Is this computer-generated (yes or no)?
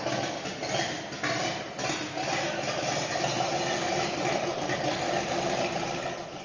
no